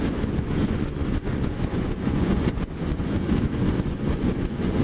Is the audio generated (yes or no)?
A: yes